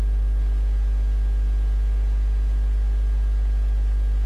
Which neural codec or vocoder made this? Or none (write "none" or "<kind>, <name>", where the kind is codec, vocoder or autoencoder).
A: none